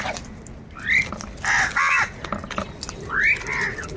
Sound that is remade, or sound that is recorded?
recorded